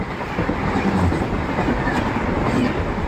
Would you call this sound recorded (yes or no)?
yes